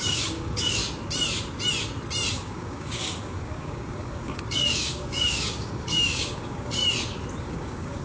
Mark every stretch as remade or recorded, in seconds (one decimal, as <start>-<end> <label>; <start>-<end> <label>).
0.0-0.8 remade; 0.8-2.3 recorded; 2.3-6.8 remade; 6.8-7.4 recorded; 7.4-8.0 remade